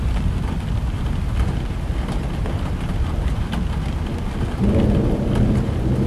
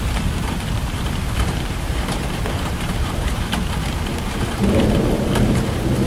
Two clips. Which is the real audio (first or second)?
first